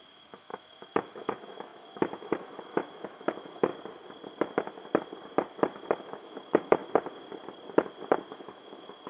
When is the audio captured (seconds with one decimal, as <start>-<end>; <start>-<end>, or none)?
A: 3.7-6.0; 6.8-8.3